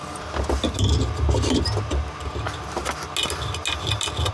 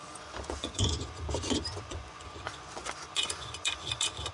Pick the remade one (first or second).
second